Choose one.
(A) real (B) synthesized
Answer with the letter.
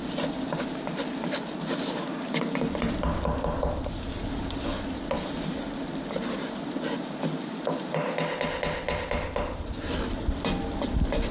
A